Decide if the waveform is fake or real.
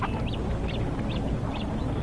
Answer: real